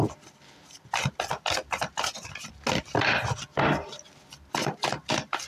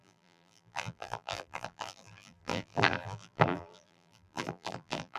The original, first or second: first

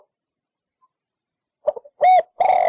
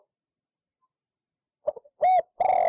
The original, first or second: second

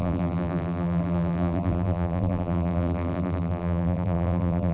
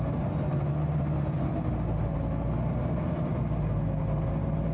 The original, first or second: second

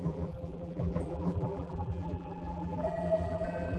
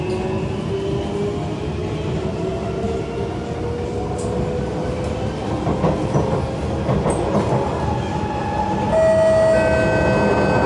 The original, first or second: second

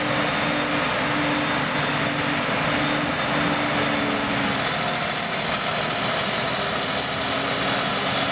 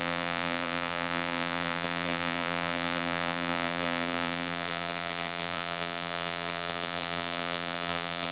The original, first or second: first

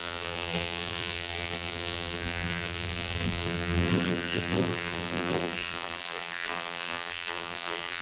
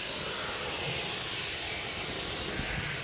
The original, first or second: second